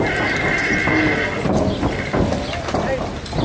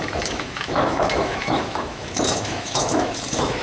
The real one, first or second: first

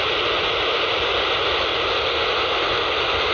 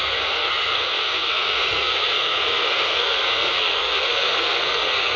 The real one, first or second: first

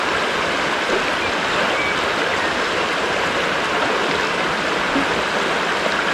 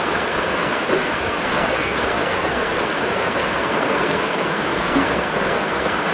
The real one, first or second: first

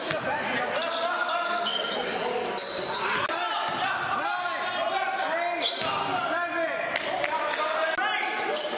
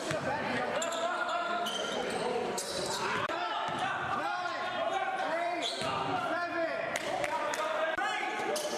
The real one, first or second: first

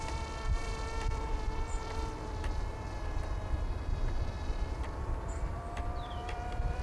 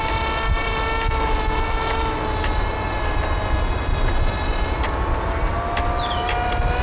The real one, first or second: second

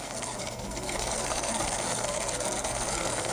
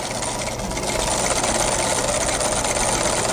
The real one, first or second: second